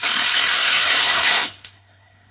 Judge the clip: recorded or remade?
remade